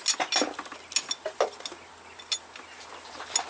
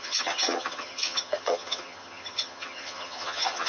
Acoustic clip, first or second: first